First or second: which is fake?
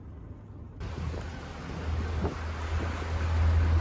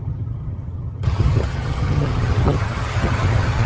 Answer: second